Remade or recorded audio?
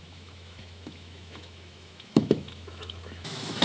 remade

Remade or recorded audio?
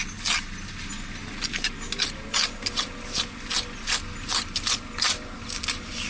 recorded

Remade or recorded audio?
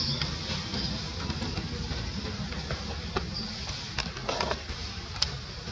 recorded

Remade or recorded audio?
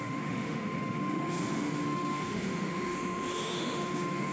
remade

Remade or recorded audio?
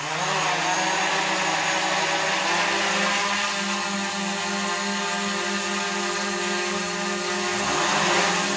recorded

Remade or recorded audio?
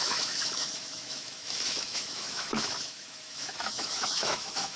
remade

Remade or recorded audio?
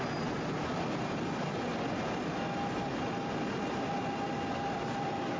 recorded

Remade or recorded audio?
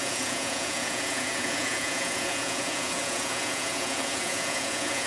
remade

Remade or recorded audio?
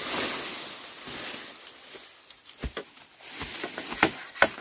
recorded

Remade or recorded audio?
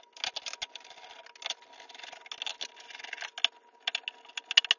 recorded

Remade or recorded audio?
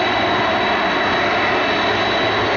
recorded